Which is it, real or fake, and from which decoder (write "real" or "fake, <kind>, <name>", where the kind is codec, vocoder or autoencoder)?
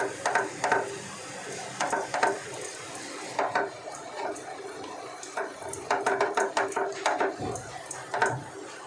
real